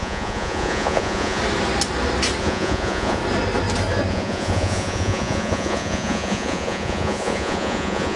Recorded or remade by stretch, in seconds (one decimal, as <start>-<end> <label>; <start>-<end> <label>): 0.0-1.4 remade; 1.4-2.4 recorded; 2.4-3.2 remade; 3.2-4.1 recorded; 4.1-8.2 remade